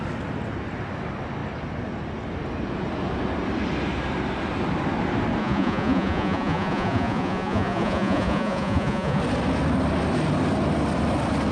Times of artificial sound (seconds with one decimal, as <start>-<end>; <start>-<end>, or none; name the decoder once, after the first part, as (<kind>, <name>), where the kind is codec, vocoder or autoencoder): 5.4-9.2 (vocoder, Vocos)